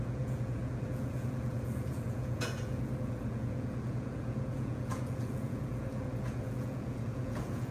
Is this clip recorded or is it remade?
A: remade